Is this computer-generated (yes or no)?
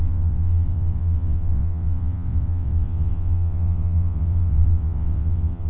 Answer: yes